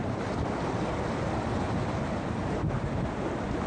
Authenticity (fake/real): real